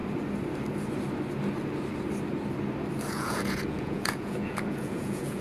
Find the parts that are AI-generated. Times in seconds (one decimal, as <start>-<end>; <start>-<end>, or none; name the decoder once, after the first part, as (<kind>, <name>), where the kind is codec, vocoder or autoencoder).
3.1-5.4 (vocoder, Vocos)